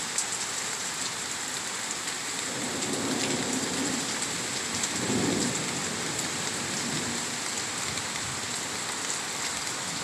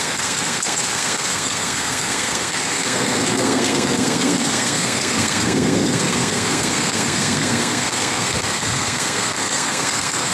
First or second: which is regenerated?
second